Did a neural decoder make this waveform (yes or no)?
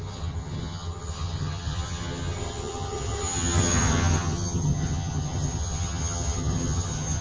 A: yes